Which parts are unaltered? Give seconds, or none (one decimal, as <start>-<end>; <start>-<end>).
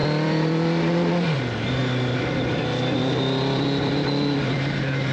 none